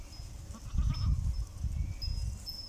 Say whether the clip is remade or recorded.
recorded